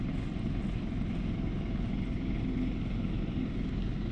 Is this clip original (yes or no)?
yes